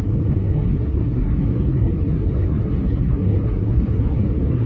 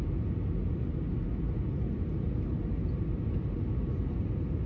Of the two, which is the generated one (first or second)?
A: first